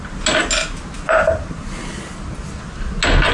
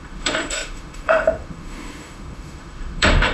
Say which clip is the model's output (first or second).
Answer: second